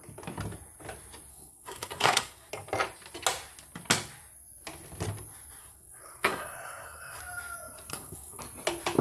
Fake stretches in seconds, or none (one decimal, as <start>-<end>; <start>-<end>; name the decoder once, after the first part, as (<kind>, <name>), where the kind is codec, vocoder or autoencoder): 1.3-2.5 (codec, SNAC); 5.6-7.2; 7.9-8.4